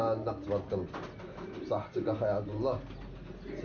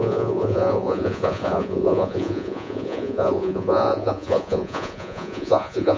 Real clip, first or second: first